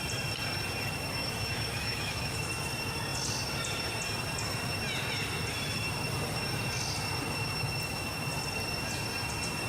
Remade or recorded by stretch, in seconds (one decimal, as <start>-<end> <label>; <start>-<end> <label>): 0.0-1.2 recorded; 1.2-2.5 remade; 2.5-9.7 recorded